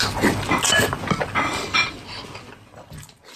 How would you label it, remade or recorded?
recorded